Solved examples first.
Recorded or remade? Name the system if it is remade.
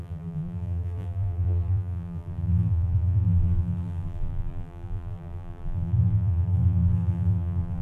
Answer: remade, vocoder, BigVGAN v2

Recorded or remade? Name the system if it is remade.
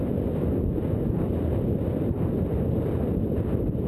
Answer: recorded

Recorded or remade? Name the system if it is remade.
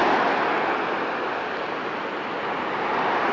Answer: recorded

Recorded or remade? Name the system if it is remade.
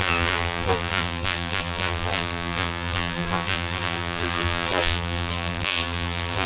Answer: remade, vocoder, BigVGAN v2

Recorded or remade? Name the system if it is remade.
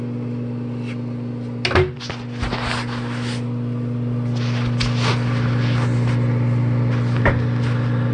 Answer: recorded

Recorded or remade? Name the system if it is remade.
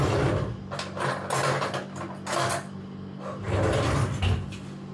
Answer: recorded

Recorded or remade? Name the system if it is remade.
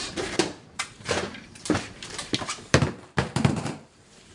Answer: remade, vocoder, BigVGAN v2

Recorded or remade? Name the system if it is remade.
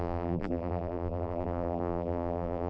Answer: remade, vocoder, BigVGAN v2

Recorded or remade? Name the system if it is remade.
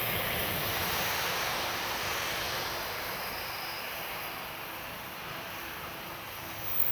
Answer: remade, vocoder, BigVGAN v2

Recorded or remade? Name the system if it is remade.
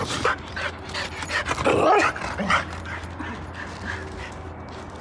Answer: recorded